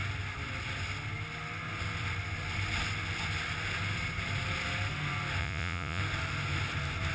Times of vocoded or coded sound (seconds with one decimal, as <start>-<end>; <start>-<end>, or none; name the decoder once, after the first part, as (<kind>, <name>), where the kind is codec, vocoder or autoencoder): 5.4-6.0 (vocoder, Vocos)